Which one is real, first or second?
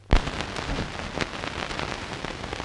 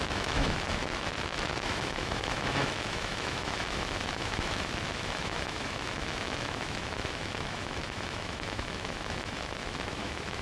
first